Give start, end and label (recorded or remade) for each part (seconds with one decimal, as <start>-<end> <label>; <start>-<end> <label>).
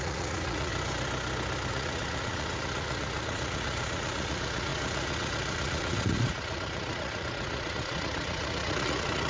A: 0.0-0.7 remade; 0.7-1.7 recorded; 1.7-9.3 remade